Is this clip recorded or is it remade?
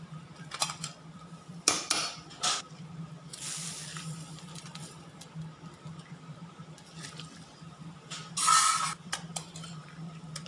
remade